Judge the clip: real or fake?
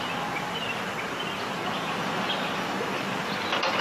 real